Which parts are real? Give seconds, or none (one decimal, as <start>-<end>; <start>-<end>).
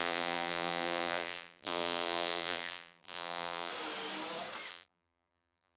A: 3.7-4.7